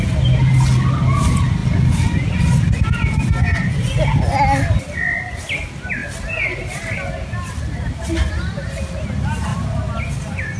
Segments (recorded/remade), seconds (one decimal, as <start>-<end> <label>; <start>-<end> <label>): 0.0-10.6 recorded

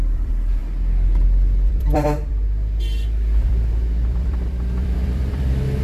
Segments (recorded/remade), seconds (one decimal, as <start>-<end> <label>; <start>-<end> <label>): 0.0-0.6 remade; 0.6-1.7 recorded; 1.7-5.8 remade